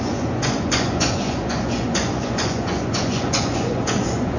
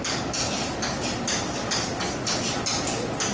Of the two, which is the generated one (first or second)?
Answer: first